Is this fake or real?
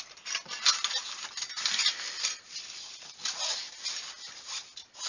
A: real